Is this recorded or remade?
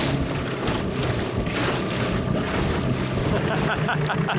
recorded